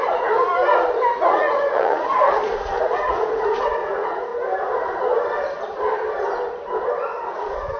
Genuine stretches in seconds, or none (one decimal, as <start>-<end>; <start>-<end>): 0.5-1.3; 4.3-7.3